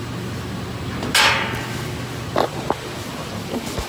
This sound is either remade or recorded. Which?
recorded